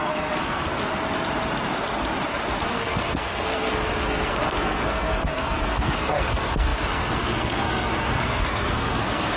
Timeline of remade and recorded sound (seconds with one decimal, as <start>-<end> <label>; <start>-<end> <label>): 0.0-0.8 remade; 0.8-2.6 recorded; 2.6-9.4 remade